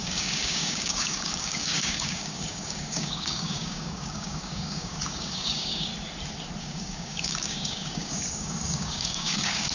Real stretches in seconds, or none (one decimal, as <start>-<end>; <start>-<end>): 5.9-6.6